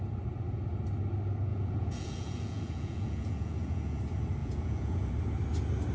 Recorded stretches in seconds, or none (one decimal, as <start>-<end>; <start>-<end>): 0.0-1.5; 4.0-4.4; 5.1-5.9